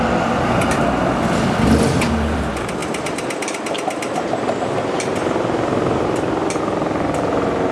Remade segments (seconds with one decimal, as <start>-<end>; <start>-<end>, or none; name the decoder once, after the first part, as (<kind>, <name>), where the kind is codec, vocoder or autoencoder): none